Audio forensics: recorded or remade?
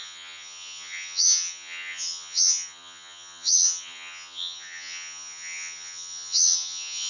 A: remade